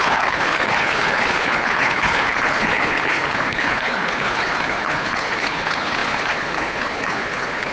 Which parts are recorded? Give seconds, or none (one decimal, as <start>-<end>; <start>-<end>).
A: none

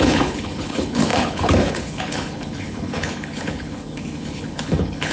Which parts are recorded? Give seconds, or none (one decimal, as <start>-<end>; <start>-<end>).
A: none